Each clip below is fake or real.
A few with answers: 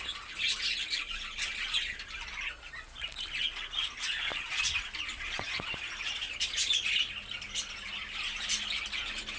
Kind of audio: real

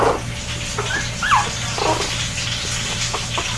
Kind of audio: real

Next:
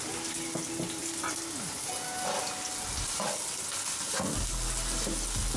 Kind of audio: real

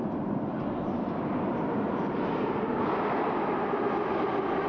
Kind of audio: real